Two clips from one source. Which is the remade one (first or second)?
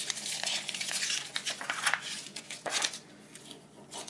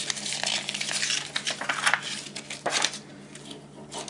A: first